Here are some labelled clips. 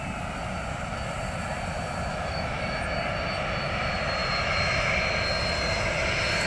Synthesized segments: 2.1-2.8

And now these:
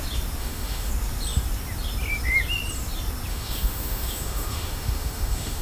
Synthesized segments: 0.4-0.9; 3.3-5.6

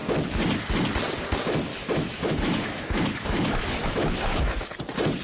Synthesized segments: 1.7-4.8